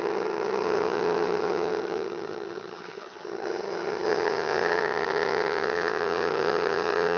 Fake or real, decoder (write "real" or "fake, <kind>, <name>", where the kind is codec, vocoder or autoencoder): fake, vocoder, HiFi-GAN